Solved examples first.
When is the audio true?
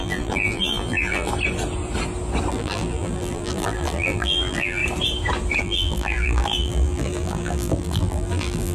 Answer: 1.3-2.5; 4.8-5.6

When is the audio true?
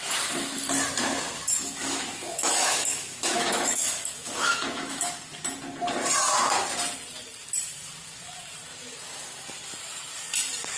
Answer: 0.0-1.5; 5.0-10.8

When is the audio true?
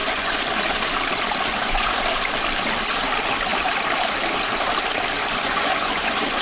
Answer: 0.6-1.5; 2.0-5.2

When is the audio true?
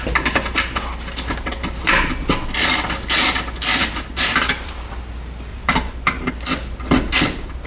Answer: 0.0-3.7; 4.9-5.5; 6.3-7.7